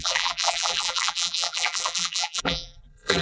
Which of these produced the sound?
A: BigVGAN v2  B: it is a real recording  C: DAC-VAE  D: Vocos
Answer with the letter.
A